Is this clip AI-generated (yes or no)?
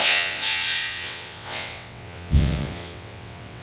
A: yes